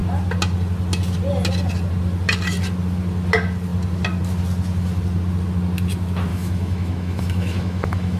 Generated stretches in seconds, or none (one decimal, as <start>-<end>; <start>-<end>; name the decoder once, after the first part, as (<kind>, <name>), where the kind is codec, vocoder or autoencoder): 6.3-8.2 (autoencoder, DAC-VAE)